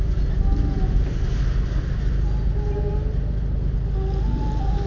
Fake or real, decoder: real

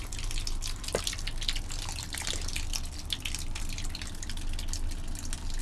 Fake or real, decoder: real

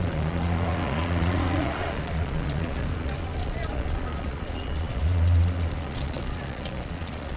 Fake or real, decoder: fake, vocoder, Vocos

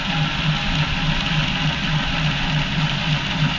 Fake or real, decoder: real